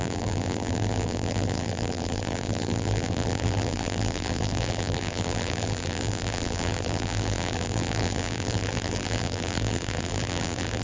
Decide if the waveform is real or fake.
fake